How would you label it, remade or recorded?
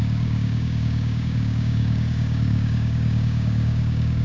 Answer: remade